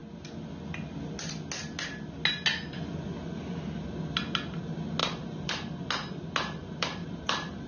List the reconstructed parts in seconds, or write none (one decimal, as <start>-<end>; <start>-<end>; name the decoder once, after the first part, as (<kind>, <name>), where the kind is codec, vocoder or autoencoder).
5.0-5.9 (vocoder, BigVGAN v2); 6.6-7.7